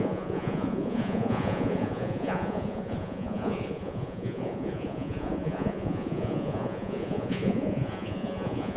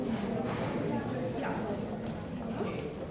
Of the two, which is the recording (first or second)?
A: second